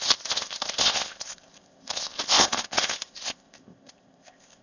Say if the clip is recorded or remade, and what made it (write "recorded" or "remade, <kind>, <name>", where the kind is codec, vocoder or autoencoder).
remade, codec, ZipCodec